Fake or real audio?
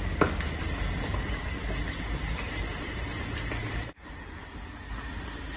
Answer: real